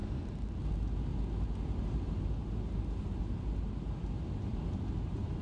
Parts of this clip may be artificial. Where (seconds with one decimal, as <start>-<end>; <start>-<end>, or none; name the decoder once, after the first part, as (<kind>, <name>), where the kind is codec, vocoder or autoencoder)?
none